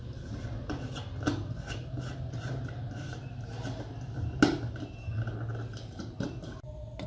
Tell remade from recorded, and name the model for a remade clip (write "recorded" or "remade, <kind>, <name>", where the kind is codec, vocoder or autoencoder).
recorded